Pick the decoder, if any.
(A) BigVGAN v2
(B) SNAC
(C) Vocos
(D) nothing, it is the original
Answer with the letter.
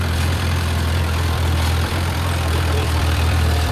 A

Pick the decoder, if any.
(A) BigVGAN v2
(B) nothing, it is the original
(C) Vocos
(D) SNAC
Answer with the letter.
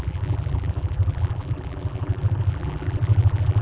A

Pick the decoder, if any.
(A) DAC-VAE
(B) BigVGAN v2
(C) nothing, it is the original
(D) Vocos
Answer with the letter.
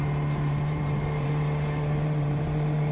B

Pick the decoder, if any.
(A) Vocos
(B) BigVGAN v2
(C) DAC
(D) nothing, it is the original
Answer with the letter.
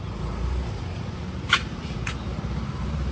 B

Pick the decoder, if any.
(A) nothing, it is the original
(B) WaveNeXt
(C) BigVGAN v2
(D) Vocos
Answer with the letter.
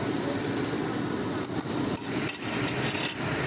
A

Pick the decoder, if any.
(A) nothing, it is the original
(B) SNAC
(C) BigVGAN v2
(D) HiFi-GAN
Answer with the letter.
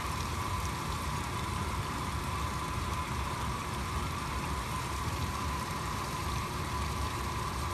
C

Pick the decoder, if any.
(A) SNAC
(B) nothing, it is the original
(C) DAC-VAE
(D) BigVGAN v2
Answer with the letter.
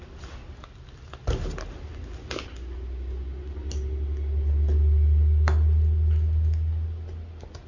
B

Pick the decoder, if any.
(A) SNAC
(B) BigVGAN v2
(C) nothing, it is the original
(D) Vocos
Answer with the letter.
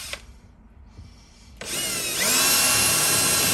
C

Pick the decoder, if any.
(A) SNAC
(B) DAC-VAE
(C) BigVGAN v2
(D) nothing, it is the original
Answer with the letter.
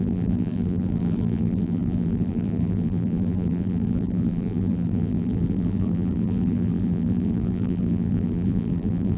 C